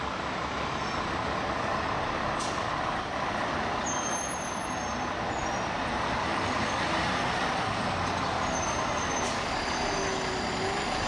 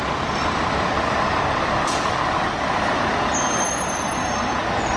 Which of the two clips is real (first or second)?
first